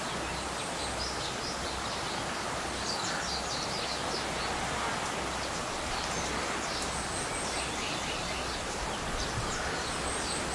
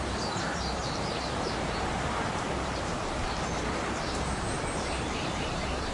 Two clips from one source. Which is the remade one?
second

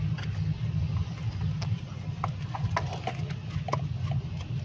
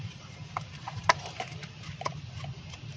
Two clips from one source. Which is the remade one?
second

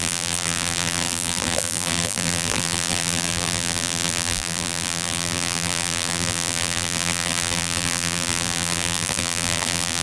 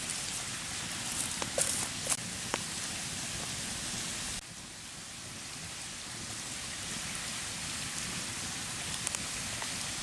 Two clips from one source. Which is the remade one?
first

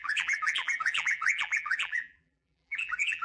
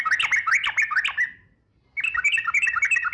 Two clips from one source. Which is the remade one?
first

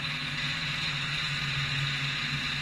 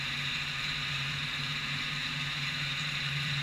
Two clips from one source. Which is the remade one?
second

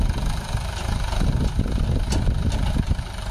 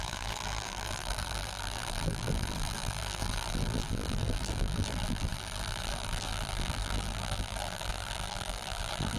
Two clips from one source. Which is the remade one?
second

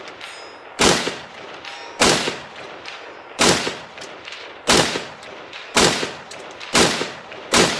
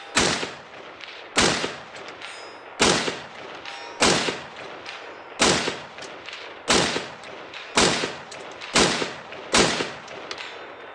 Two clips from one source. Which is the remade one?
first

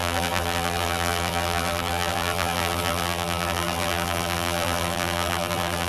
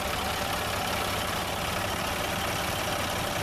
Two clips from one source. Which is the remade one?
first